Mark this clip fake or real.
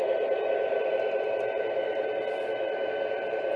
real